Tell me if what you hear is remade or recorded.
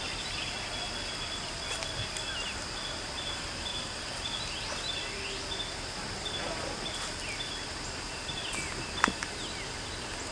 recorded